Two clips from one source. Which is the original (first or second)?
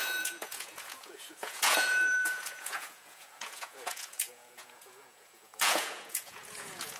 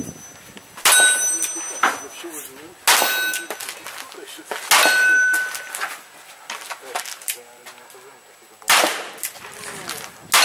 second